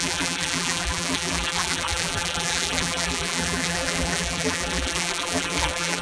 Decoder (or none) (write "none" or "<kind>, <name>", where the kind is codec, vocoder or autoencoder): vocoder, BigVGAN v2